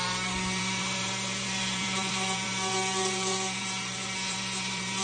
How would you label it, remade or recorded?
remade